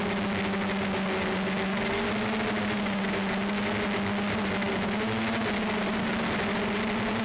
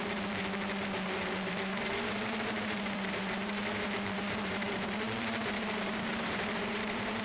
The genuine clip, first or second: first